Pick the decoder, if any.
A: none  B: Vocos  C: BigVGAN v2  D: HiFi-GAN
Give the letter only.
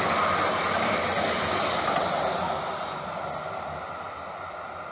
A